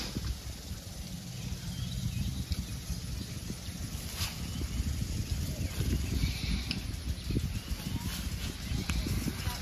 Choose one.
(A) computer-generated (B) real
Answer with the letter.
B